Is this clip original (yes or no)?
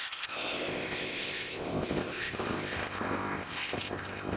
no